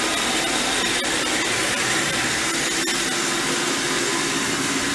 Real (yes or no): yes